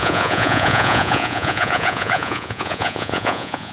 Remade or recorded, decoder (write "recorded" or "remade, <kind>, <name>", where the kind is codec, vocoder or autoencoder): remade, vocoder, Vocos